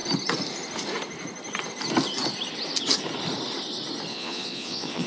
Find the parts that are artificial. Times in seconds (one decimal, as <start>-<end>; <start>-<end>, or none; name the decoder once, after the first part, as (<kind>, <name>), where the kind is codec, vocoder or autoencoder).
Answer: 4.1-5.1 (vocoder, Vocos)